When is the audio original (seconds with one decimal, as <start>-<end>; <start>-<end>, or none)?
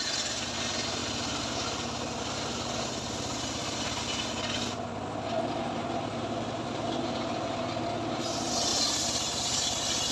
0.0-6.1; 7.6-8.7